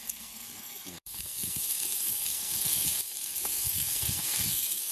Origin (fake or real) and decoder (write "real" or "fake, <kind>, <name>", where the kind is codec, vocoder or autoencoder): fake, codec, SNAC